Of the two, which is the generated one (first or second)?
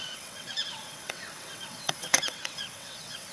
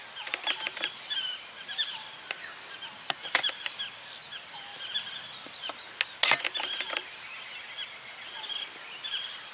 first